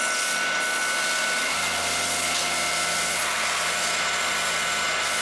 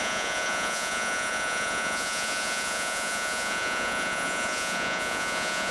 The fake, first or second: second